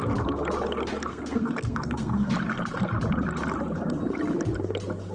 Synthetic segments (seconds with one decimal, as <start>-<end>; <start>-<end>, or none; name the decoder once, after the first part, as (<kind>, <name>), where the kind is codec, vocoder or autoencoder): 1.1-2.3 (codec, SNAC)